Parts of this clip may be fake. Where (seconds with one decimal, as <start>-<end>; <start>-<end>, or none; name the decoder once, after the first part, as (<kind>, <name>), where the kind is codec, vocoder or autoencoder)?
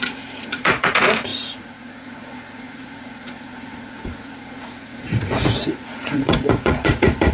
0.0-7.3 (vocoder, Vocos)